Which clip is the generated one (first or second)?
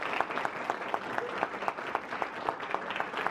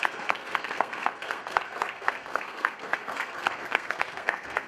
second